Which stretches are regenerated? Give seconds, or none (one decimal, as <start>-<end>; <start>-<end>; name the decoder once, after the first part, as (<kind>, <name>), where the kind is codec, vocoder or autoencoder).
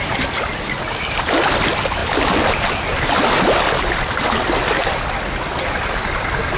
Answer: none